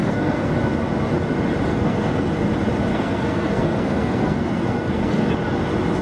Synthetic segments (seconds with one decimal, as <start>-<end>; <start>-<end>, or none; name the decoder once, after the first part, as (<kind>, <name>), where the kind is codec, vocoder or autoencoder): 0.0-0.5 (codec, SNAC); 1.7-2.3; 2.9-5.3